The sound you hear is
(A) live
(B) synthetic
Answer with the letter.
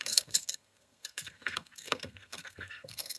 B